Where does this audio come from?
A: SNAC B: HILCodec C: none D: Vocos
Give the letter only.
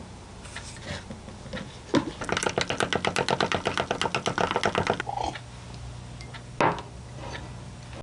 C